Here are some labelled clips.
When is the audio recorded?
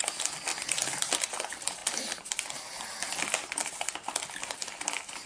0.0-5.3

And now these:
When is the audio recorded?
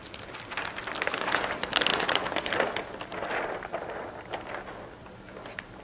0.0-5.8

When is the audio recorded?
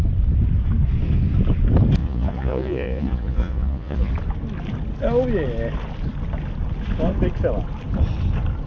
0.0-2.0; 4.1-8.7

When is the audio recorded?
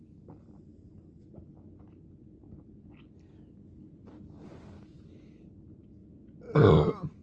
0.0-7.2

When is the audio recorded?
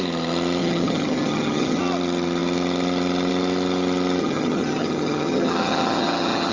0.0-0.6; 1.8-4.2